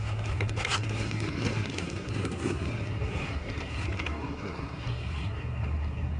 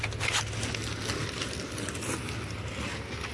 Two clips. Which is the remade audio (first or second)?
first